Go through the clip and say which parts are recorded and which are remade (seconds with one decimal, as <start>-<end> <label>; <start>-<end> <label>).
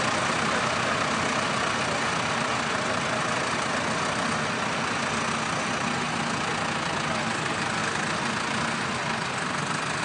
0.0-10.0 recorded